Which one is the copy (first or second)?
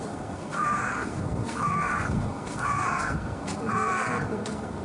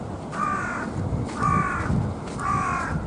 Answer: first